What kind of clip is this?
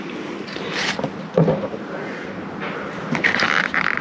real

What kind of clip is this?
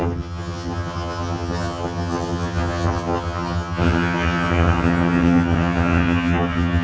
fake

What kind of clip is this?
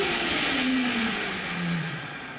fake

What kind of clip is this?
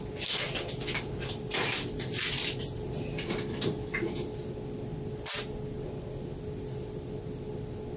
real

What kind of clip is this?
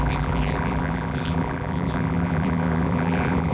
fake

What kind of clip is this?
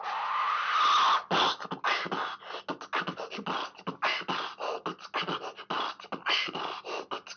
real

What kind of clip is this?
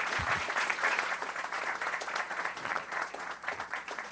fake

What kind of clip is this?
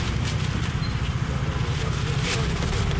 real